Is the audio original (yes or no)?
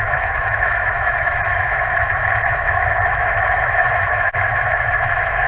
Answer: no